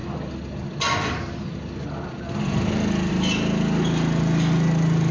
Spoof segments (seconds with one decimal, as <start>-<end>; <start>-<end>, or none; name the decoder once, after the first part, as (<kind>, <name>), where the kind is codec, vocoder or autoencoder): none